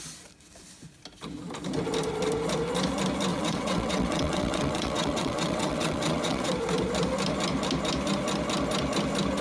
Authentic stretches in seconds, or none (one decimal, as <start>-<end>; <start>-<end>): 0.0-3.3; 6.5-9.4